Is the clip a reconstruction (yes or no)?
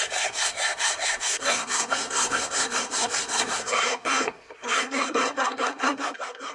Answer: yes